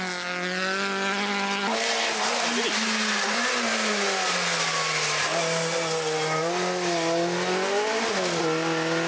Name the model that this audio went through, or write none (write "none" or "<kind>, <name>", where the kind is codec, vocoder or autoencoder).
none